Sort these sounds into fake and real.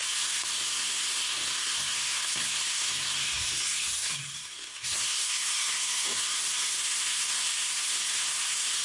fake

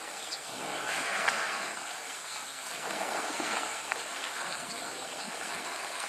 fake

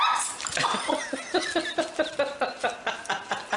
real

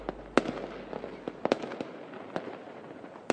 real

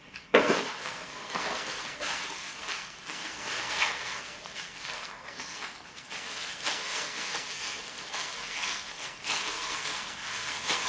fake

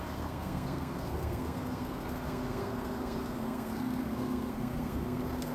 fake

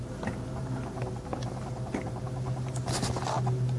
real